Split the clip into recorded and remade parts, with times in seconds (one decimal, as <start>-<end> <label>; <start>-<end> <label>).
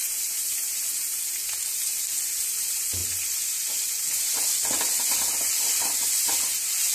0.0-0.8 remade; 0.8-6.9 recorded